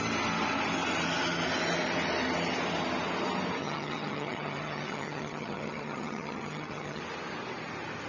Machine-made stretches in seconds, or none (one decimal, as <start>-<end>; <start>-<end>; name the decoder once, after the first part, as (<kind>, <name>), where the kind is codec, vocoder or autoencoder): 3.6-7.0 (vocoder, HiFi-GAN)